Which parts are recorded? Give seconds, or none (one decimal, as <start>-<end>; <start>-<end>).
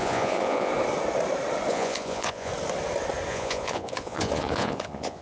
0.7-1.7; 2.5-3.3